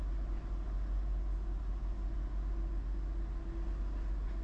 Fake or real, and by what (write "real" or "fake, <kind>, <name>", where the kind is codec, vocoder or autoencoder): real